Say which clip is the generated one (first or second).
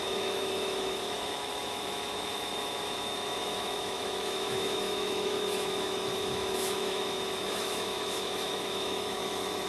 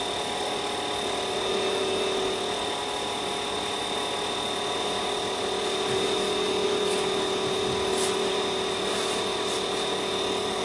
first